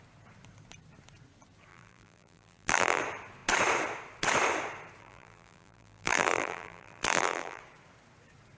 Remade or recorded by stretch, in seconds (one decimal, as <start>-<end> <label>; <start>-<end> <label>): 0.0-1.7 recorded; 1.7-3.0 remade; 3.0-5.0 recorded; 5.0-7.6 remade; 7.6-8.6 recorded